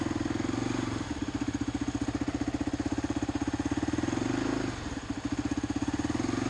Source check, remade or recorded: recorded